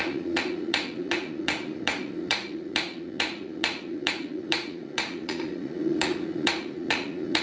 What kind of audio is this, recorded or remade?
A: remade